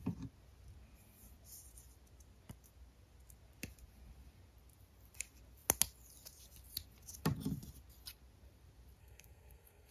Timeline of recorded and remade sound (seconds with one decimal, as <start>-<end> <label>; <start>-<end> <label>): 0.0-9.0 recorded; 9.0-9.9 remade

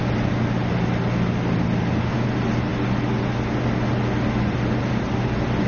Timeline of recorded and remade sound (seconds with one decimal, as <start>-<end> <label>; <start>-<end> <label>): 0.0-5.7 recorded

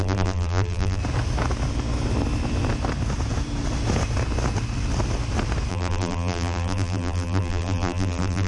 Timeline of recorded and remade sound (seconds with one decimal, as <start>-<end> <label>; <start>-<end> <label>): 0.0-1.0 remade; 1.0-5.7 recorded; 5.7-8.5 remade

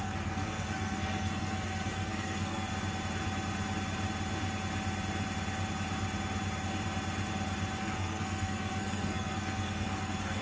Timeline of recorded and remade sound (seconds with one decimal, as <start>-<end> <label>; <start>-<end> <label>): 0.0-2.7 remade; 2.7-7.8 recorded; 7.8-10.4 remade

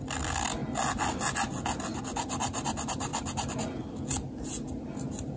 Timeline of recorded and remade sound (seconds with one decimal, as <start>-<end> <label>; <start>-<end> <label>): 0.0-5.4 recorded

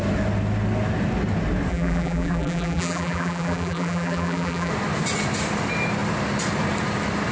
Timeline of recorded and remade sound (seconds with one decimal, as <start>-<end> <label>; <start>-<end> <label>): 0.0-1.7 recorded; 1.7-4.7 remade; 4.7-7.3 recorded

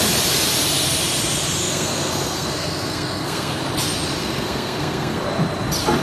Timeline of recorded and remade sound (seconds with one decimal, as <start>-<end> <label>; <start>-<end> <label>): 0.0-1.6 recorded; 1.6-3.6 remade; 3.6-4.2 recorded; 4.2-5.2 remade; 5.2-6.0 recorded